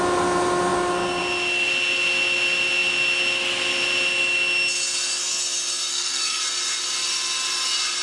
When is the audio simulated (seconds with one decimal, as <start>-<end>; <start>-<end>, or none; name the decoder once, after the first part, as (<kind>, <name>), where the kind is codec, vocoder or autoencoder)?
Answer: 5.9-6.4 (codec, SNAC)